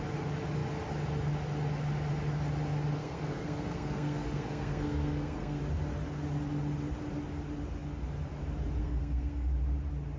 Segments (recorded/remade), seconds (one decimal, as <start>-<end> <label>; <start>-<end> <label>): 0.0-3.0 recorded; 3.0-5.6 remade; 5.6-8.8 recorded; 8.8-9.5 remade; 9.5-10.2 recorded